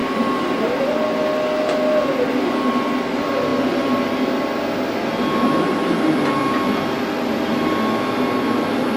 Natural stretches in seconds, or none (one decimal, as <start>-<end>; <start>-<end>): 0.7-9.0